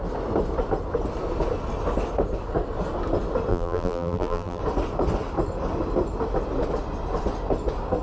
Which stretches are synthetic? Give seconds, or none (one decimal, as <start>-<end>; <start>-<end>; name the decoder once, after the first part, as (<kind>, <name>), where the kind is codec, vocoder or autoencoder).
3.5-4.6 (vocoder, BigVGAN v2)